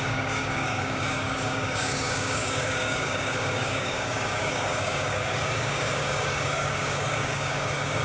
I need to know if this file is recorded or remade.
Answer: remade